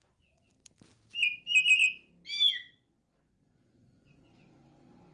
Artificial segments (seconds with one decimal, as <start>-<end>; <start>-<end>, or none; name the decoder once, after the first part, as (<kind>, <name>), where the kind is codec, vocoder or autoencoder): 0.0-0.5 (vocoder, Vocos); 2.7-5.1